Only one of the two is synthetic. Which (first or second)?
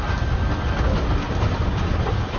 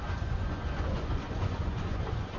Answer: second